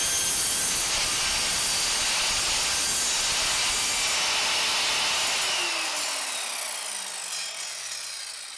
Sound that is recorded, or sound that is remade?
recorded